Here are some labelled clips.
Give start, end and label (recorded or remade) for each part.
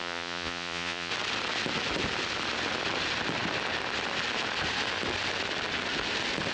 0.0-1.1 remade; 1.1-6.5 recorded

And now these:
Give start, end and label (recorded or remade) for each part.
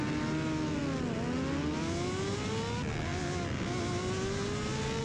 0.0-5.0 recorded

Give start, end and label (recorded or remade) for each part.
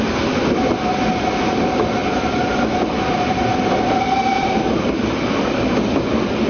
0.0-6.5 recorded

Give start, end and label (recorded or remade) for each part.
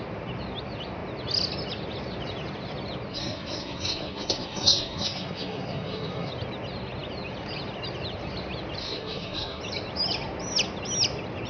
0.0-3.1 recorded; 3.1-6.3 remade; 6.3-8.8 recorded; 8.8-9.6 remade; 9.6-11.5 recorded